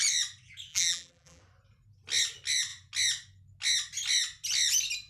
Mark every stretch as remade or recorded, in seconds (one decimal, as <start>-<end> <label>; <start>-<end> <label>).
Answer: 0.0-0.7 recorded; 0.7-1.4 remade; 1.4-5.1 recorded